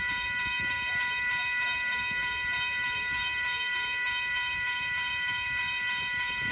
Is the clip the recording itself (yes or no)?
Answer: no